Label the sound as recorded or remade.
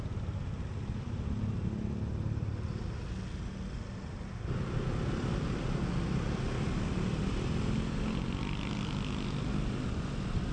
recorded